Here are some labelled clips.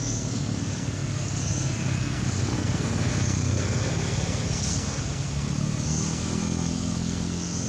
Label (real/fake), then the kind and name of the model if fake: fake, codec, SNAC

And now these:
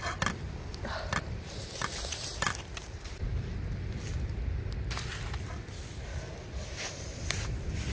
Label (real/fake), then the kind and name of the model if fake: real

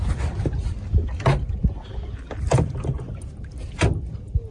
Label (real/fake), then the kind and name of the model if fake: real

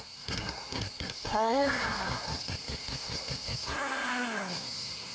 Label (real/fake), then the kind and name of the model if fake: fake, codec, SNAC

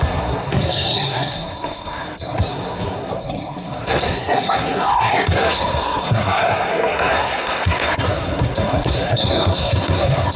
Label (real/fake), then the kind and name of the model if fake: fake, codec, SNAC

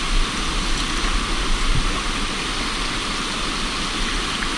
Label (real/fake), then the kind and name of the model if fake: real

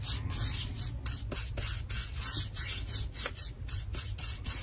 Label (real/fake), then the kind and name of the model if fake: real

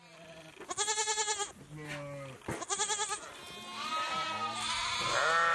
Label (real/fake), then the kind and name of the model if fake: real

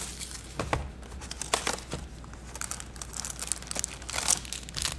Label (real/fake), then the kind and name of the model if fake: real